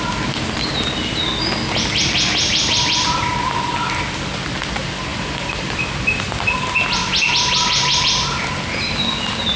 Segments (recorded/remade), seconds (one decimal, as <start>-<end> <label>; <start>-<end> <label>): 0.0-9.6 recorded